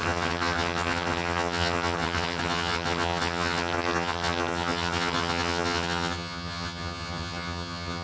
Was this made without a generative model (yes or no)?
no